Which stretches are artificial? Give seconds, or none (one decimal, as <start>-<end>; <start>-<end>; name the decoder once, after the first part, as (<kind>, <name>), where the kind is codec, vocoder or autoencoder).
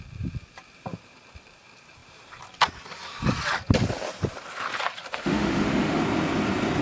5.1-6.0 (autoencoder, DAC-VAE)